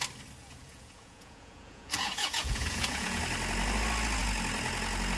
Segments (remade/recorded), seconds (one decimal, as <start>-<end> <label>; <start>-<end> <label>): 0.0-0.4 recorded; 0.4-3.2 remade; 3.2-5.2 recorded